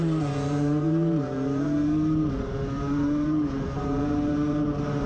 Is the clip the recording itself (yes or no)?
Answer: no